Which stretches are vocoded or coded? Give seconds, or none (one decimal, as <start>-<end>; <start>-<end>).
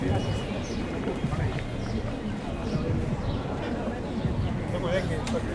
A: 0.0-1.4; 2.6-4.3